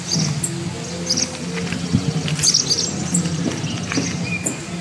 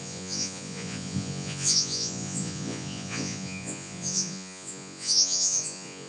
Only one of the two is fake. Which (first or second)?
second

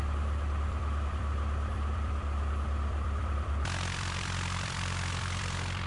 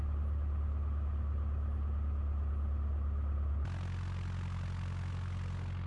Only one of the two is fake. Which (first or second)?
first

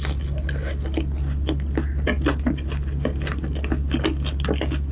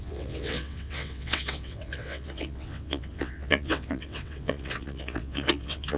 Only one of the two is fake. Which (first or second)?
second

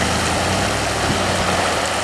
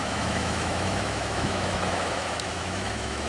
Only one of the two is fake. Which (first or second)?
second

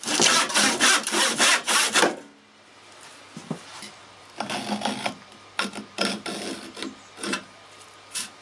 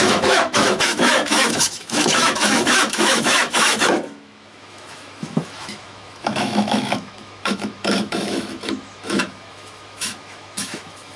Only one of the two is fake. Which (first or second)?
second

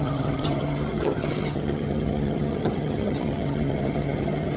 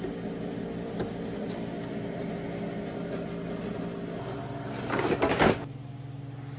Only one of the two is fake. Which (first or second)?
first